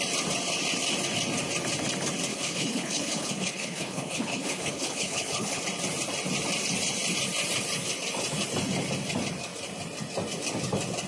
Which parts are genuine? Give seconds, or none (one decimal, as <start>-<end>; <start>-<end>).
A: 0.0-2.3; 5.6-11.1